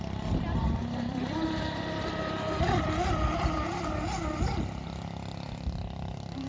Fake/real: real